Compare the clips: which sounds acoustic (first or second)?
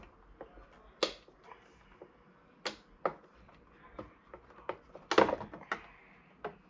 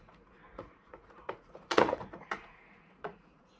first